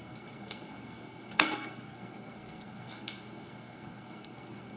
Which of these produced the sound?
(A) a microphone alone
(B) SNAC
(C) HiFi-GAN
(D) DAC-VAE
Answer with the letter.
B